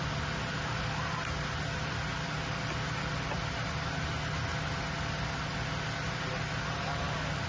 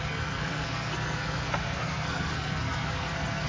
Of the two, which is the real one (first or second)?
first